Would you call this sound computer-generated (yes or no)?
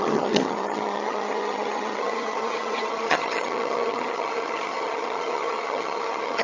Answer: yes